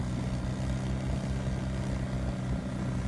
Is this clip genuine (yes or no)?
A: yes